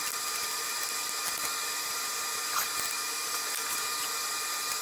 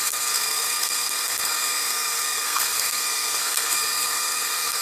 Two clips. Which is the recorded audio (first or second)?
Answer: first